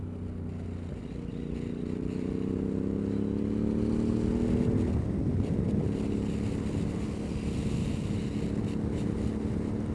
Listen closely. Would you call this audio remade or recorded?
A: recorded